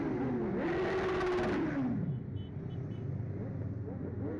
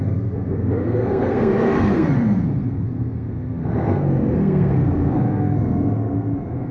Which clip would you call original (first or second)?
first